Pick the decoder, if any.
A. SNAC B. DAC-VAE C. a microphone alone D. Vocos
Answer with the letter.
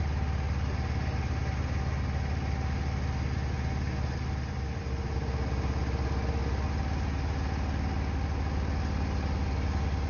C